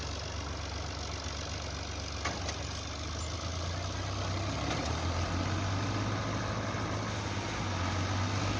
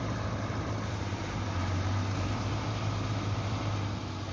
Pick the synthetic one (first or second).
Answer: second